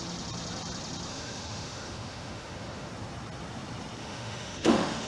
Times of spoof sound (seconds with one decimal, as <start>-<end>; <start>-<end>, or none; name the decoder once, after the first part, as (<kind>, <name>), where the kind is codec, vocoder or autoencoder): 1.1-2.9 (autoencoder, DAC-VAE); 4.0-5.1